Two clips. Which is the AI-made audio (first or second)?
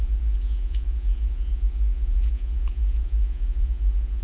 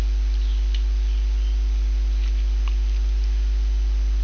first